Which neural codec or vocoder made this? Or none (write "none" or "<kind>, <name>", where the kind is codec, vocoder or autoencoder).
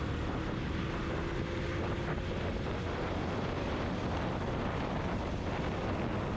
none